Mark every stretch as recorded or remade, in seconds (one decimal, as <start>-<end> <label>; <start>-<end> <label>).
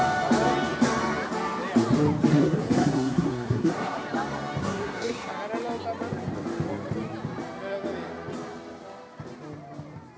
0.0-2.3 recorded; 2.3-4.0 remade; 4.0-4.6 recorded; 4.6-5.3 remade; 5.3-10.2 recorded